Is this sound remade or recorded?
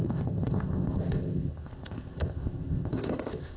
remade